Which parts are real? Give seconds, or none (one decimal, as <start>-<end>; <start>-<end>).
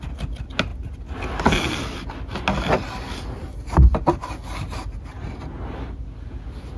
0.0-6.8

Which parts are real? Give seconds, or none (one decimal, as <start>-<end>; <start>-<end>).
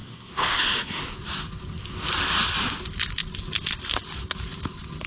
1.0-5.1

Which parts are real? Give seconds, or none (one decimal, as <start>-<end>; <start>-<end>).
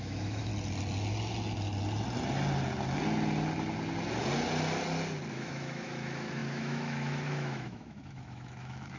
0.5-5.3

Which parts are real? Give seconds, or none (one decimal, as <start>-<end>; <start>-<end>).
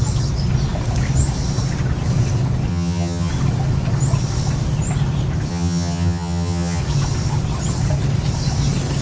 0.0-2.7; 3.3-5.5; 6.8-9.0